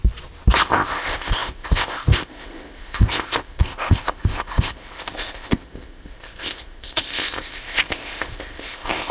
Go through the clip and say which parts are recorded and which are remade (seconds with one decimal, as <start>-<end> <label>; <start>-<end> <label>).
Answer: 0.0-0.6 recorded; 0.6-9.1 remade